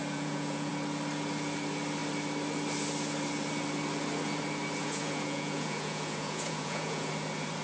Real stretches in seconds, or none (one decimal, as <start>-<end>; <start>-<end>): 0.7-4.8; 7.1-7.6